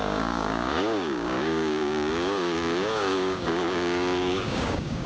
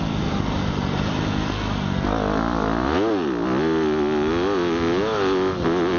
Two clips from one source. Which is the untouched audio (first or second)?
second